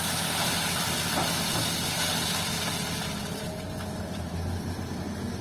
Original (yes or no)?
yes